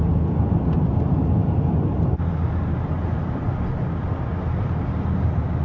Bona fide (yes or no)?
yes